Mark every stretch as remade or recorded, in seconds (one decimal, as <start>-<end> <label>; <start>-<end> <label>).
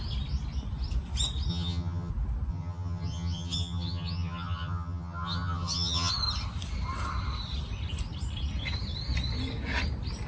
0.0-1.5 recorded; 1.5-2.1 remade; 2.1-2.5 recorded; 2.5-6.1 remade; 6.1-10.3 recorded